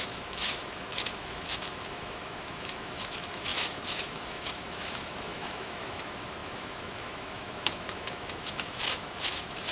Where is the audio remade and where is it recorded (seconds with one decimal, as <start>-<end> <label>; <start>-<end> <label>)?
0.0-9.7 remade

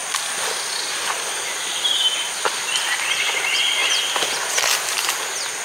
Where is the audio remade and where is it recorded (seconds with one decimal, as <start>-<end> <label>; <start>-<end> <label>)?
0.0-5.6 recorded

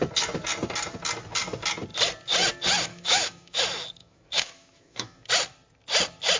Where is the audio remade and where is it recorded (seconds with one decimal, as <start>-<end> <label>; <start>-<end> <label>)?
0.0-2.9 recorded; 2.9-3.6 remade; 3.6-4.0 recorded; 4.0-5.3 remade; 5.3-6.4 recorded

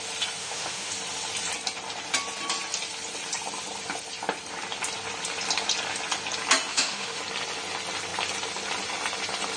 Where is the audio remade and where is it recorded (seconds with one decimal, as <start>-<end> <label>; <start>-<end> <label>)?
0.0-0.4 recorded; 0.4-0.9 remade; 0.9-6.7 recorded; 6.7-7.2 remade; 7.2-9.6 recorded

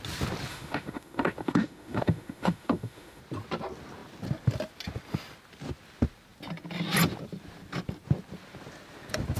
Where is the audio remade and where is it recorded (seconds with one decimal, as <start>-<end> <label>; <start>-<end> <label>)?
0.0-0.5 recorded; 0.5-3.2 remade; 3.2-9.4 recorded

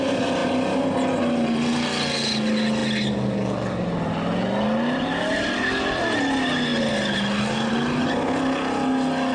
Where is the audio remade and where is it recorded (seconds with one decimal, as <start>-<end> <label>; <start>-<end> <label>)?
0.0-9.3 recorded

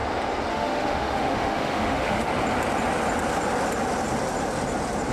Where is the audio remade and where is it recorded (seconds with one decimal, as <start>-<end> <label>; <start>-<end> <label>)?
0.0-0.5 recorded; 0.5-2.3 remade; 2.3-5.1 recorded